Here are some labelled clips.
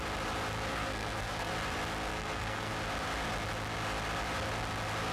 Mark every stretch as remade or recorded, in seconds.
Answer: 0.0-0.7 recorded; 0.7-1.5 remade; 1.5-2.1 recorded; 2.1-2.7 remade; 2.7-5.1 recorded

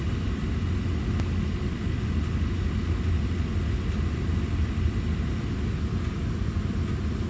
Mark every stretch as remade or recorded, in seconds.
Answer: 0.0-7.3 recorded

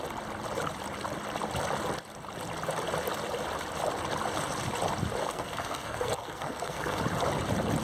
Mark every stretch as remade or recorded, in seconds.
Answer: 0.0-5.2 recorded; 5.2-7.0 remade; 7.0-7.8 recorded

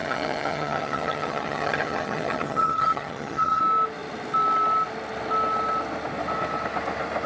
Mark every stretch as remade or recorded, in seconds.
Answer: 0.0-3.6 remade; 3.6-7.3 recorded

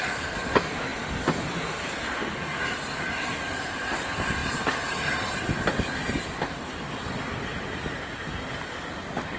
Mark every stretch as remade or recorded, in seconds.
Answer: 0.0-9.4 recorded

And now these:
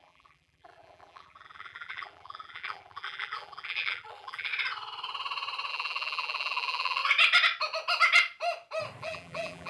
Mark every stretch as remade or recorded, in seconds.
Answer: 0.0-4.5 remade; 4.5-5.7 recorded; 5.7-7.0 remade; 7.0-9.0 recorded; 9.0-9.7 remade

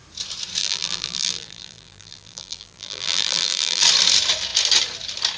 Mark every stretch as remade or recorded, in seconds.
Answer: 0.0-0.6 recorded; 0.6-3.8 remade; 3.8-5.4 recorded

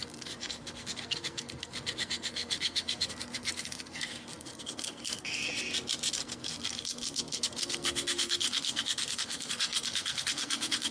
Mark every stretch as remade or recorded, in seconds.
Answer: 0.0-5.5 remade; 5.5-6.1 recorded; 6.1-10.9 remade